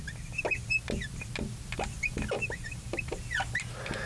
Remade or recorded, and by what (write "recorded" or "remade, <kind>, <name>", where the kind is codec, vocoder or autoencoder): recorded